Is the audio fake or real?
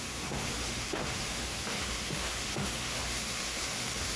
fake